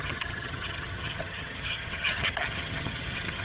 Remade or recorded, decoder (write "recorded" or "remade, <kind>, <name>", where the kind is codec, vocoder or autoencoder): remade, vocoder, HiFi-GAN